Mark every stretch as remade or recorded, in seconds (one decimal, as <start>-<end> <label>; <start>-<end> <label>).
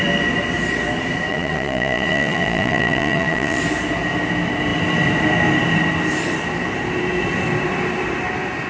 0.0-1.3 recorded; 1.3-3.6 remade; 3.6-8.7 recorded